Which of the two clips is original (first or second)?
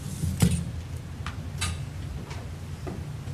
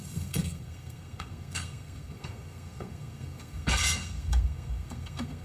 first